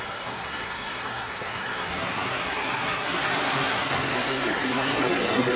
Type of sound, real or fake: fake